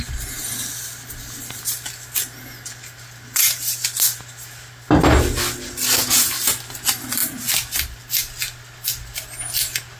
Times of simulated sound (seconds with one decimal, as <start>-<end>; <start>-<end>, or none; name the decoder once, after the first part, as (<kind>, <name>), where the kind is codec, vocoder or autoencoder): none